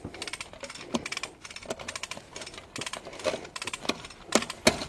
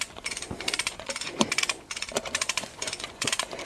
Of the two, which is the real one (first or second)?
first